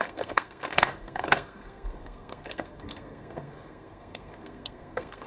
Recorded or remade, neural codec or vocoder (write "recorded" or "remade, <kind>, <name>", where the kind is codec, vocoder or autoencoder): remade, codec, SNAC